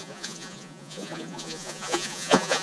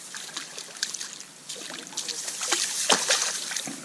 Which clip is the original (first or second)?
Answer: second